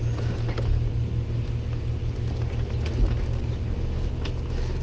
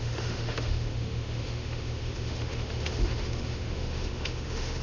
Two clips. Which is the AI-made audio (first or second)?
second